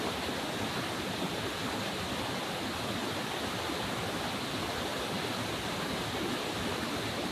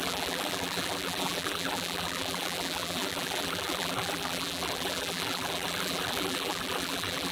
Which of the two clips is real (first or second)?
first